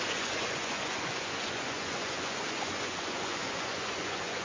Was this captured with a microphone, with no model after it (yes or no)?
no